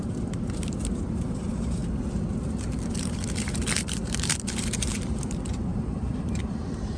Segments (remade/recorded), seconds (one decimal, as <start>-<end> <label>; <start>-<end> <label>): 0.0-1.8 remade; 1.8-2.9 recorded; 2.9-7.0 remade